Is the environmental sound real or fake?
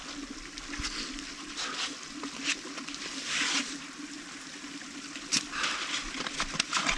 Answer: real